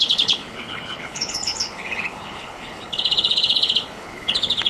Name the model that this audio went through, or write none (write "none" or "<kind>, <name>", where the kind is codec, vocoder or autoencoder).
codec, HILCodec